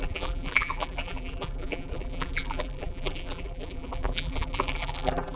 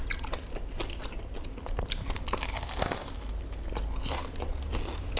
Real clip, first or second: second